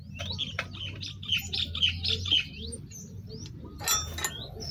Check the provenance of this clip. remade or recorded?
recorded